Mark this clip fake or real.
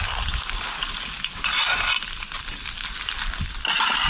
real